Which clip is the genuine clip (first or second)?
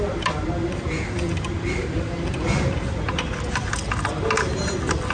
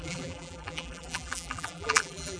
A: first